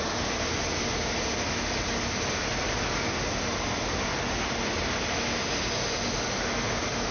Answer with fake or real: real